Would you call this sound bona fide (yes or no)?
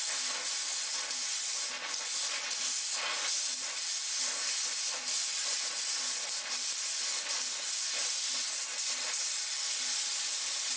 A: yes